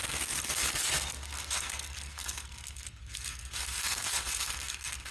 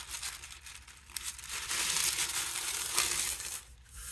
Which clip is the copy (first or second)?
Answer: first